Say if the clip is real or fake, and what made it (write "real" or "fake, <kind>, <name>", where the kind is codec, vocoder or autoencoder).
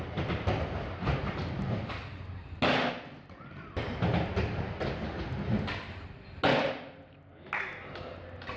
real